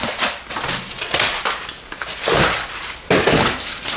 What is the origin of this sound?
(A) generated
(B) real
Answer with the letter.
B